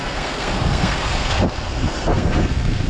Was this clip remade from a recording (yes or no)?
yes